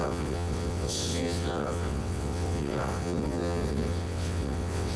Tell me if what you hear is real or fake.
fake